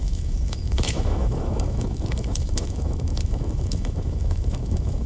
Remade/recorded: remade